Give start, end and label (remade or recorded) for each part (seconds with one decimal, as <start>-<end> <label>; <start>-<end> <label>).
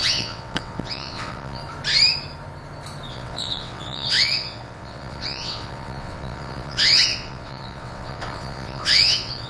0.0-1.6 remade; 1.6-3.1 recorded; 3.1-9.5 remade